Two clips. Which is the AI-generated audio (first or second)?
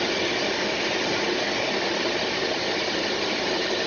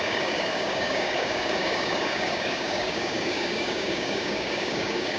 second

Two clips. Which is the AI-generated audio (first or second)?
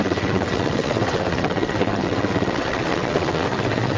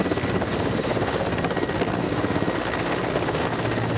first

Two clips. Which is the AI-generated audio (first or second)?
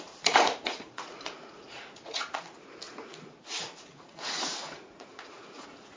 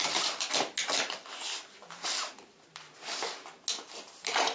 first